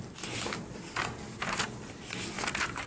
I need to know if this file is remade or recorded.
recorded